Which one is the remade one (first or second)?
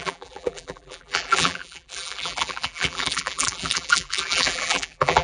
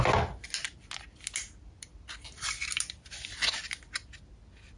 first